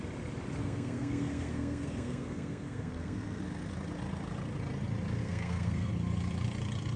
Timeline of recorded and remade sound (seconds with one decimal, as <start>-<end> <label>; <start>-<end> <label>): 0.0-0.6 recorded; 0.6-3.4 remade; 3.4-5.2 recorded; 5.2-5.9 remade; 5.9-7.0 recorded